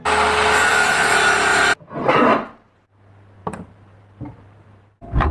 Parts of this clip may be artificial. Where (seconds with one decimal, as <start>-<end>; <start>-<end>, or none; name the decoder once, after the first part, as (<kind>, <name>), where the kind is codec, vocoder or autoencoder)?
3.4-5.3 (vocoder, BigVGAN v2)